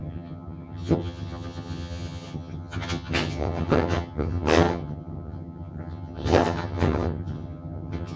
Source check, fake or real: fake